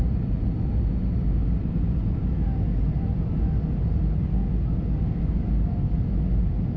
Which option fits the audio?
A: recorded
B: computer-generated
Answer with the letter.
A